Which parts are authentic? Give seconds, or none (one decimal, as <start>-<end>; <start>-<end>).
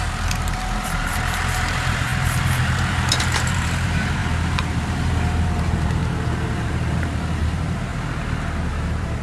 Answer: 4.2-4.7; 6.0-6.5; 7.9-8.7